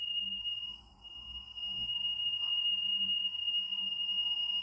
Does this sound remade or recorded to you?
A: remade